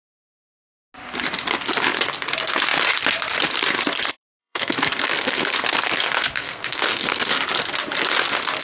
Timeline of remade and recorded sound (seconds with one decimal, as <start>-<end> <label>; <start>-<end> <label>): 0.0-4.4 recorded; 4.4-7.3 remade; 7.3-8.6 recorded

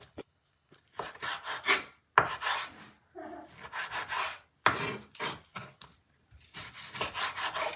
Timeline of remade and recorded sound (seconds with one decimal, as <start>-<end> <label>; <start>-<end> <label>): 0.0-0.8 remade; 0.8-5.5 recorded; 5.5-5.9 remade; 5.9-7.8 recorded

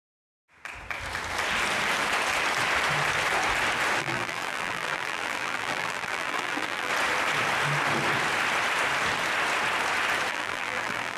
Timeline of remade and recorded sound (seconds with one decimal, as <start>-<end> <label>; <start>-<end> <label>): 0.0-0.4 remade; 0.4-4.0 recorded; 4.0-6.9 remade; 6.9-10.3 recorded; 10.3-11.2 remade

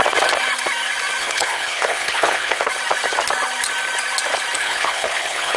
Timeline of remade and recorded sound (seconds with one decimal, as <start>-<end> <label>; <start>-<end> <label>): 0.0-1.2 recorded; 1.2-2.7 remade; 2.7-4.6 recorded; 4.6-5.6 remade

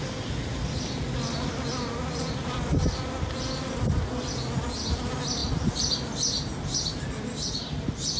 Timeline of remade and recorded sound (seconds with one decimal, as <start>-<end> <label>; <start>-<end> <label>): 0.0-8.2 recorded

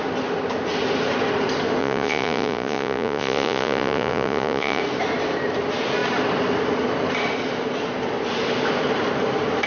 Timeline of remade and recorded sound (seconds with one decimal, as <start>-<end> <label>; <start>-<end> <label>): 0.0-1.8 recorded; 1.8-4.8 remade; 4.8-9.7 recorded